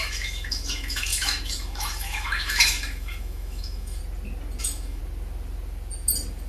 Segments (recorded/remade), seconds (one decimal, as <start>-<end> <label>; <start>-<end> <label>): 0.0-4.0 remade; 4.0-4.6 recorded; 4.6-5.0 remade; 5.0-6.5 recorded